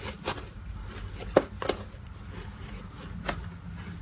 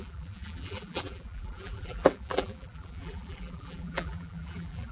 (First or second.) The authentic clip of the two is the first